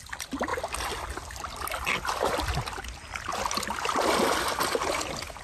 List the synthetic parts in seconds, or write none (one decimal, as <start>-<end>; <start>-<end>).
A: none